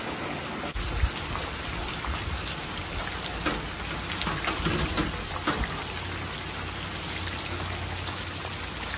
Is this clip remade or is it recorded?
recorded